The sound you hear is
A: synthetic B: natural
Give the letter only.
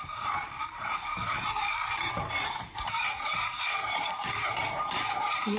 A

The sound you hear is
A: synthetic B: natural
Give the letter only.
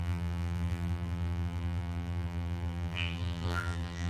A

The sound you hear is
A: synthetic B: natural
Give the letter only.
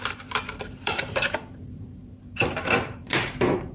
A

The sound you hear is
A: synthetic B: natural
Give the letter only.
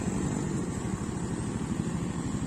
B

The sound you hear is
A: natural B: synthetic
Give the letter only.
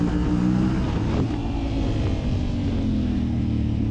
A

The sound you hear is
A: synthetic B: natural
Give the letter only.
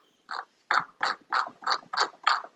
B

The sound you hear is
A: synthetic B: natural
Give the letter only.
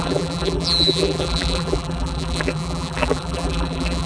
A